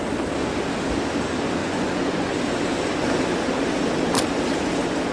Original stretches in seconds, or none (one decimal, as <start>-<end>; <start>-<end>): 0.0-1.6; 2.4-5.1